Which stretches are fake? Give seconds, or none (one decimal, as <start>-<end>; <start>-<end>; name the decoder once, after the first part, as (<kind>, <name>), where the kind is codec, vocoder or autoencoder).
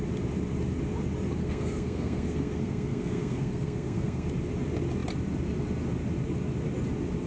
1.4-4.3 (codec, SNAC)